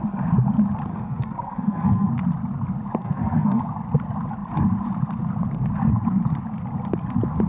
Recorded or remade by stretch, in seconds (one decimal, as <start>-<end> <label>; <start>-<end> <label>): 0.0-0.9 recorded; 0.9-2.1 remade; 2.1-3.0 recorded; 3.0-3.6 remade; 3.6-7.5 recorded